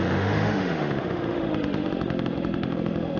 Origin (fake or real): fake